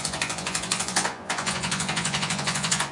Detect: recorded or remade remade